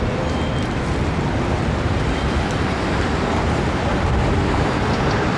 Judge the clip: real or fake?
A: fake